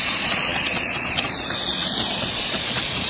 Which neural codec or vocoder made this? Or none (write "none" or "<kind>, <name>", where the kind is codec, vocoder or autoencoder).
vocoder, Vocos